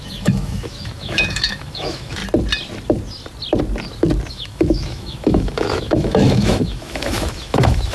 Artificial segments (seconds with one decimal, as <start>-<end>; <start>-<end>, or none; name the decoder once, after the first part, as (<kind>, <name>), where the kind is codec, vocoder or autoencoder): 0.0-2.2 (autoencoder, DAC-VAE); 4.3-7.9